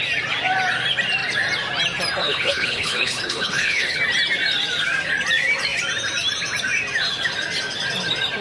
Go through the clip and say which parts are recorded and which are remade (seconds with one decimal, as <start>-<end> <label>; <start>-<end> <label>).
0.0-2.2 recorded; 2.2-4.0 remade; 4.0-8.4 recorded